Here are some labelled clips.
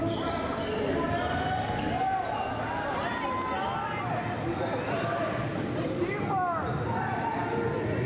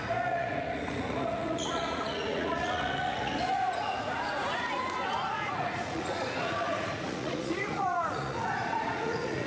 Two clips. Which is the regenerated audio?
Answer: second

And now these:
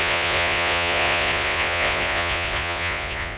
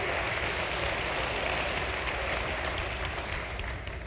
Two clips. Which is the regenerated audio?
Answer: first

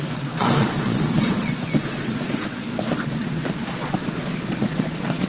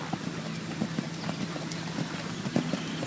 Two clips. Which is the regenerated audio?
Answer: first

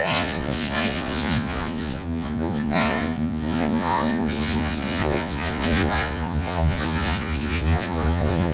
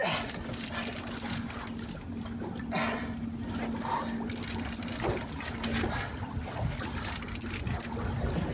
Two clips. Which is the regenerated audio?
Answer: first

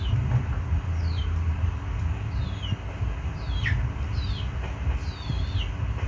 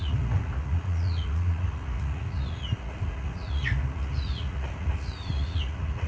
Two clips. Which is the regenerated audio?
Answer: second